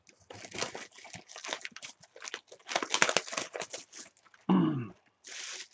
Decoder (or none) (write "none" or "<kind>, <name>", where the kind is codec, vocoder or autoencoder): none